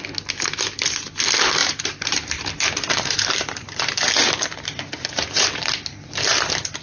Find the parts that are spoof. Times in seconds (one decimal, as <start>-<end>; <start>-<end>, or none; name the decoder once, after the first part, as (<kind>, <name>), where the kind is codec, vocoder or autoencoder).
1.6-5.7 (vocoder, BigVGAN v2)